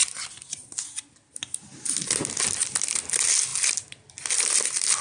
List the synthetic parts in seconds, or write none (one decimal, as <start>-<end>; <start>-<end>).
none